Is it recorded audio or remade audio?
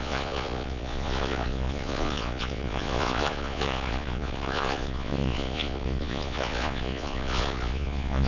remade